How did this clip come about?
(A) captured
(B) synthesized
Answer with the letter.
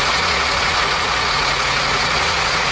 B